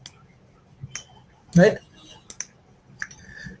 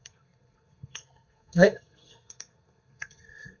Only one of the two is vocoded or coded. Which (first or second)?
second